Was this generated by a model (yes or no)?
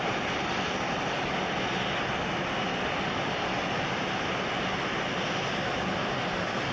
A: no